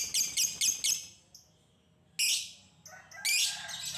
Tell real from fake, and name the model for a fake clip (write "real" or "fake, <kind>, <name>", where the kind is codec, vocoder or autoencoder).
real